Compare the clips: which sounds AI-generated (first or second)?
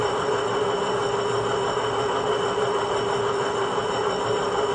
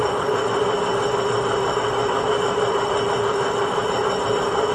second